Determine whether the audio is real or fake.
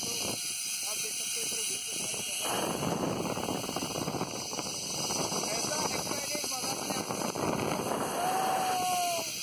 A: real